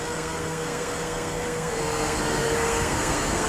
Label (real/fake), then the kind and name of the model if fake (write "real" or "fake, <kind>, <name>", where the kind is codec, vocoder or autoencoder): fake, codec, SNAC